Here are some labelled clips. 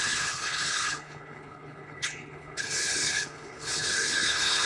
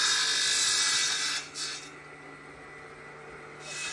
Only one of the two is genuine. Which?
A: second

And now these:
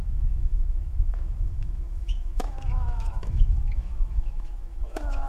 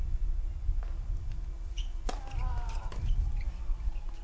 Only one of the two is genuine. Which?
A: second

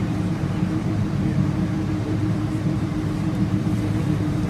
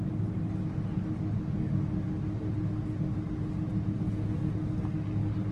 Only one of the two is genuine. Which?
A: second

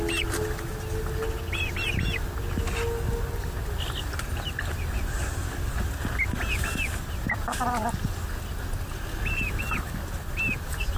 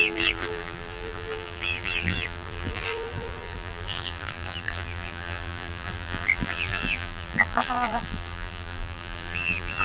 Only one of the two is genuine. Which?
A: first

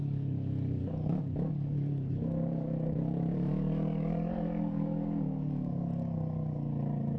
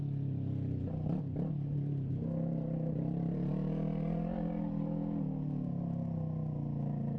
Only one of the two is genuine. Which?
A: second